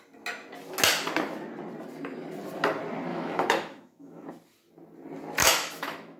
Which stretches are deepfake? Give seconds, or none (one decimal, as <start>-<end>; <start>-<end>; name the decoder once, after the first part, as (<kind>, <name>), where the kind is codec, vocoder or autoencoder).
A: 3.1-4.3 (autoencoder, DAC-VAE); 5.4-6.2